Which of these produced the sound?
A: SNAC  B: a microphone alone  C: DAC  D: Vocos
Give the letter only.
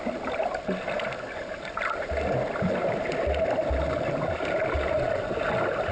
B